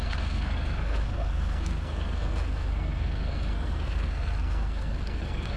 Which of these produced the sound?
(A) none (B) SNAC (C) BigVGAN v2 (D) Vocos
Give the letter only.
B